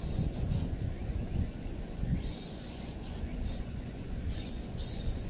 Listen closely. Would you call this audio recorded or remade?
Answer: remade